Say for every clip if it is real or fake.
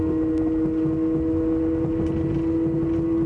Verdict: real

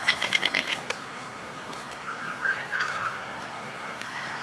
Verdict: fake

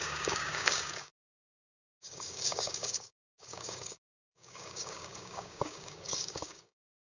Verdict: fake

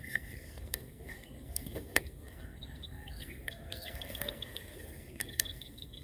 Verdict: fake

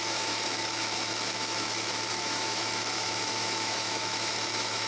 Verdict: fake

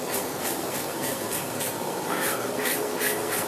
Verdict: fake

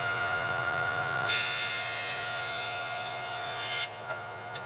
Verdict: fake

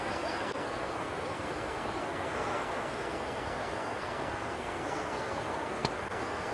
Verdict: fake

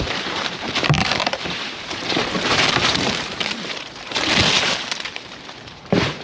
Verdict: fake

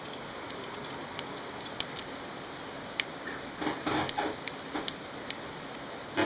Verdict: real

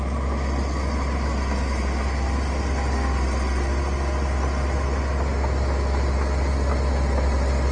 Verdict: real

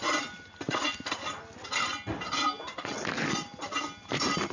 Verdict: real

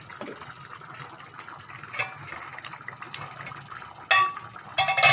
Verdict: real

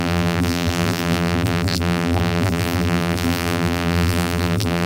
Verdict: fake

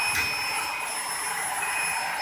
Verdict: real